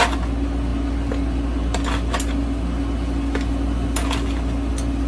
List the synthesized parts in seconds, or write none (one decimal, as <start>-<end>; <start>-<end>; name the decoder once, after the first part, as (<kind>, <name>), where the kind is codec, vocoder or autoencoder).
none